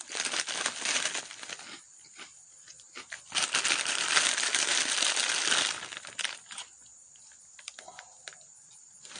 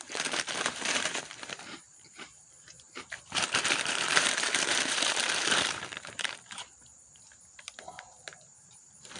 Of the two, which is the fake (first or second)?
second